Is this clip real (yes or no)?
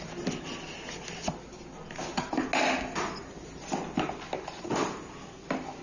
yes